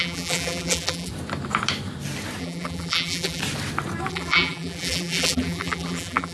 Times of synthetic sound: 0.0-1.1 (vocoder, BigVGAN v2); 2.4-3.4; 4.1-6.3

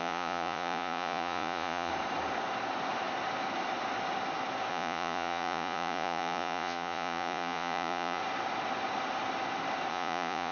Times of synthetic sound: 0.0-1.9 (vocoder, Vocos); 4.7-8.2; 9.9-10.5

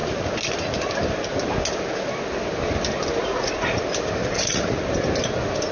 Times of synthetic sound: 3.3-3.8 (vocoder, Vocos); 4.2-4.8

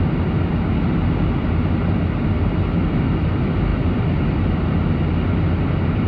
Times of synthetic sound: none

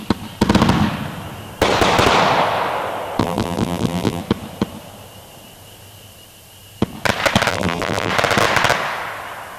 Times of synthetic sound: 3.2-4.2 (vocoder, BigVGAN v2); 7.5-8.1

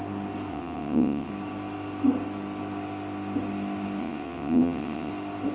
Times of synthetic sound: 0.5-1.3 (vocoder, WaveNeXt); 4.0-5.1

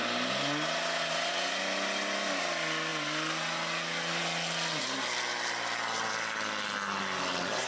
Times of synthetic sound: none